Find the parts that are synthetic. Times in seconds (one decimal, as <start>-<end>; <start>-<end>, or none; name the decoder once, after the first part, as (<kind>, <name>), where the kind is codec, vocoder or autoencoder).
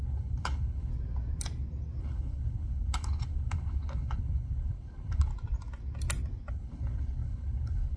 0.0-0.9 (codec, HILCodec); 2.0-5.3; 6.5-8.0